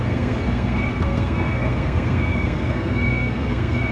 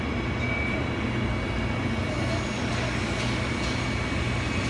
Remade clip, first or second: first